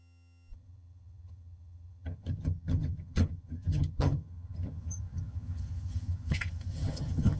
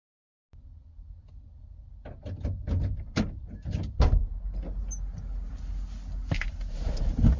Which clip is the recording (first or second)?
second